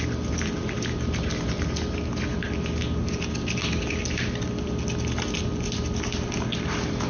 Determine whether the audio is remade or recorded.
recorded